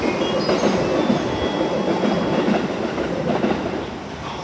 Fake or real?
real